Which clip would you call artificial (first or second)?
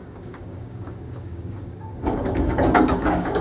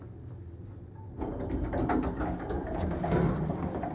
first